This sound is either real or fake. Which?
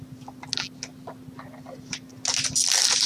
real